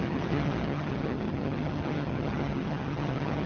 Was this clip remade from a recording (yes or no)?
yes